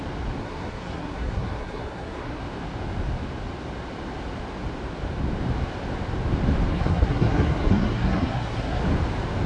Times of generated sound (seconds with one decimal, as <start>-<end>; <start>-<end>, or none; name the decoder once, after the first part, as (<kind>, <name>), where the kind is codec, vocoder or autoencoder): 0.4-2.4 (codec, SNAC); 6.7-8.8